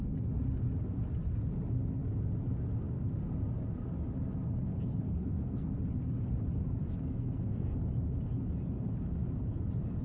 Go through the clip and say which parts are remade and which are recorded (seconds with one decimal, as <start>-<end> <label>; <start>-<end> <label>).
0.0-5.0 recorded; 5.0-5.7 remade; 5.7-6.8 recorded; 6.8-7.8 remade; 7.8-10.0 recorded